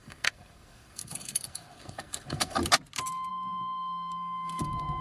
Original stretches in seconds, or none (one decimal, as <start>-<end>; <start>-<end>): 2.6-3.3